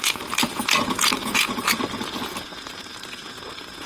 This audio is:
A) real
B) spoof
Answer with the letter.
B